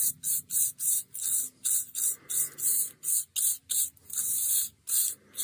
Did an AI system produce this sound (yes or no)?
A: no